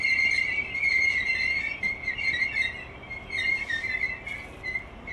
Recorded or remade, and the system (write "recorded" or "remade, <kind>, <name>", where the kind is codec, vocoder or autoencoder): remade, vocoder, BigVGAN v2